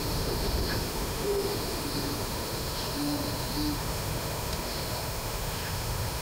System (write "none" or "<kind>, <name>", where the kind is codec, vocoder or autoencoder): autoencoder, DAC-VAE